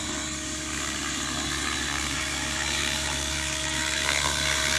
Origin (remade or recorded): remade